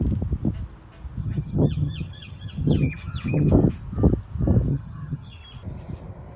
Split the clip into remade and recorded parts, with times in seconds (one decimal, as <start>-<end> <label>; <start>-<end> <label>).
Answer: 0.0-1.2 recorded; 1.2-3.5 remade; 3.5-4.7 recorded; 4.7-5.4 remade; 5.4-6.4 recorded